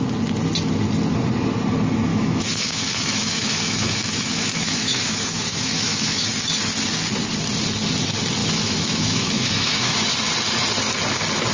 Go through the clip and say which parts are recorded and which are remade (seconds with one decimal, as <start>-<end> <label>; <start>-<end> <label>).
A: 0.0-2.1 recorded; 2.1-6.3 remade; 6.3-8.4 recorded; 8.4-10.1 remade; 10.1-11.5 recorded